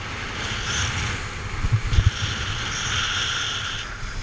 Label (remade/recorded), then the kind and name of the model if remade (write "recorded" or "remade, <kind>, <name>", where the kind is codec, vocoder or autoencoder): recorded